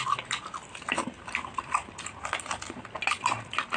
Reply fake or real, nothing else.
real